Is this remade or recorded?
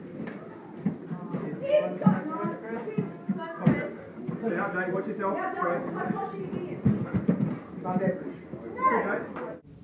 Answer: recorded